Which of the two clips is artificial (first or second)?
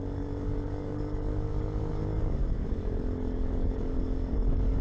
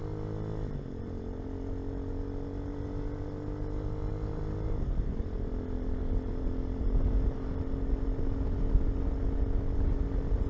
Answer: first